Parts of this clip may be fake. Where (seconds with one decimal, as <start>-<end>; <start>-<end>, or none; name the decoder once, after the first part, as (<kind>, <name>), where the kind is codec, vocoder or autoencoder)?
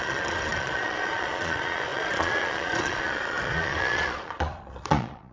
0.0-5.3 (vocoder, Vocos)